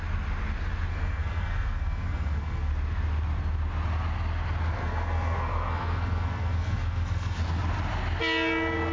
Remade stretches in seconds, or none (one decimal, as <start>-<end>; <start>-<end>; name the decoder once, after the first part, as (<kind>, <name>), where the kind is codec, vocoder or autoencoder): 0.9-2.7 (codec, SNAC); 4.8-7.4